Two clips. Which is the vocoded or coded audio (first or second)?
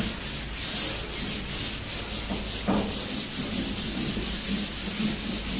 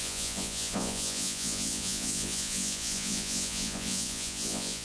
second